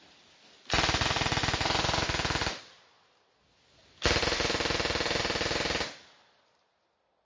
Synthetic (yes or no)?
no